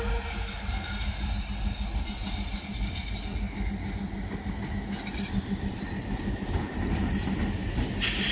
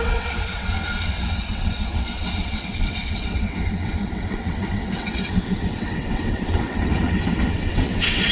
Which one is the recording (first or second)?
first